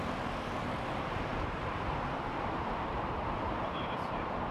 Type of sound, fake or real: fake